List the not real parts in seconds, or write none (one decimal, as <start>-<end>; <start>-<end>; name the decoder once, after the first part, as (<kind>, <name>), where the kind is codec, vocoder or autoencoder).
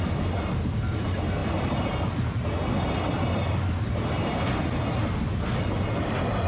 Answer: none